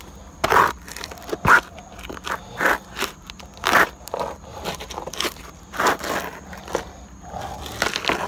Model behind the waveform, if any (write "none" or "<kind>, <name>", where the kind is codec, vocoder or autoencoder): none